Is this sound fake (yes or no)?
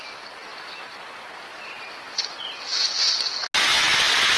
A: no